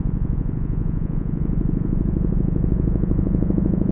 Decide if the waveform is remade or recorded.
remade